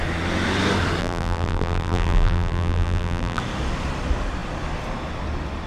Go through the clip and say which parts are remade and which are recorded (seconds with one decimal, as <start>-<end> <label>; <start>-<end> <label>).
0.0-1.0 recorded; 1.0-3.4 remade; 3.4-5.7 recorded